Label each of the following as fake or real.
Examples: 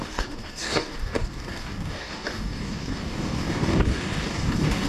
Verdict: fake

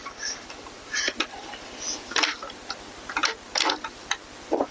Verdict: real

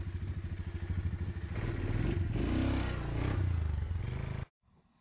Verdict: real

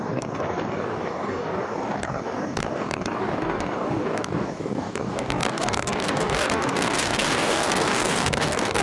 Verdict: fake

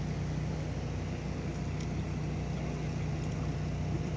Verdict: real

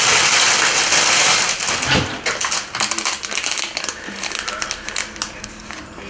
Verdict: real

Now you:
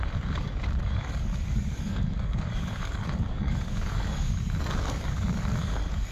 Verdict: fake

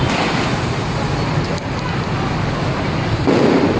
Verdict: real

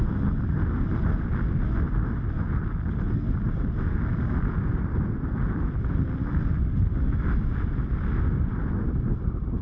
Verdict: real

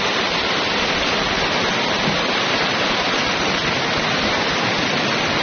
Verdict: real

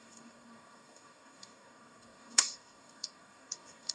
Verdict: fake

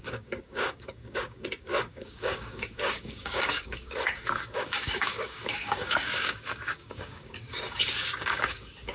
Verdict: fake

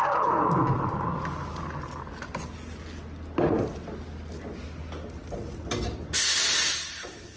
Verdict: real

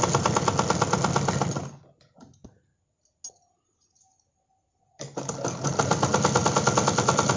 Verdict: real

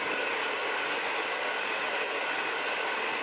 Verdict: real